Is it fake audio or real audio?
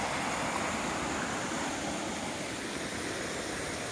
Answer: real